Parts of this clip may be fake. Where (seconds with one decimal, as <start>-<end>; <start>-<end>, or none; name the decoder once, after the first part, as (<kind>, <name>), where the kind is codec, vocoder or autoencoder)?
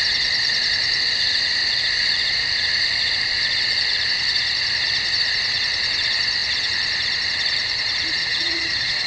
8.2-9.1 (vocoder, HiFi-GAN)